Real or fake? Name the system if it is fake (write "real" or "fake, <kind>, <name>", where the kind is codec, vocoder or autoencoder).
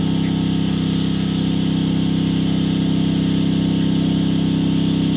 real